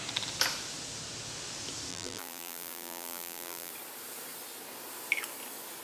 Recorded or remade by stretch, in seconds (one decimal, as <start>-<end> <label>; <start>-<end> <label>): 0.0-1.9 recorded; 1.9-3.7 remade; 3.7-5.8 recorded